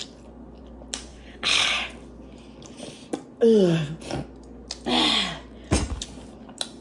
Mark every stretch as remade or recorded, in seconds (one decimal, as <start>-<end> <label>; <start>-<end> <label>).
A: 0.0-1.1 recorded; 1.1-1.7 remade; 1.7-6.8 recorded